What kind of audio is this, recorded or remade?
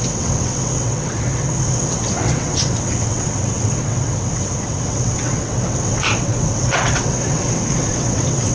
remade